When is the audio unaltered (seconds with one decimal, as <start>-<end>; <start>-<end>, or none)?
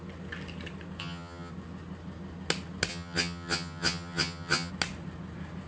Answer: 0.0-1.0; 1.5-2.9; 4.7-5.7